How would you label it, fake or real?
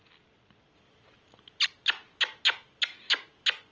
real